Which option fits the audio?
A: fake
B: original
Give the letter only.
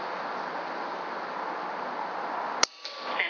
B